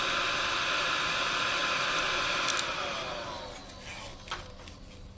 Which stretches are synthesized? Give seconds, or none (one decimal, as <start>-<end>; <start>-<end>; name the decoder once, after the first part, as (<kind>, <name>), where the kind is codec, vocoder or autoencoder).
none